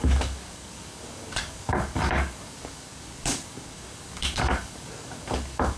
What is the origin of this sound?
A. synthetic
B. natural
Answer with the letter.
A